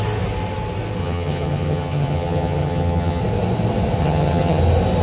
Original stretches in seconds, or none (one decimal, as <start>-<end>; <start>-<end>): 0.0-1.0; 3.2-4.0; 4.6-5.0